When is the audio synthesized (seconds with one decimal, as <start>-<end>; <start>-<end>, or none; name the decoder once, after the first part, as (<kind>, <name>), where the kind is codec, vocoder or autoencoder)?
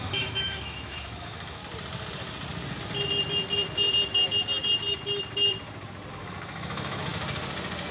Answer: 0.0-1.6 (autoencoder, DAC-VAE); 6.1-7.1